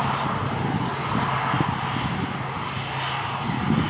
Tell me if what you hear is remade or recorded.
recorded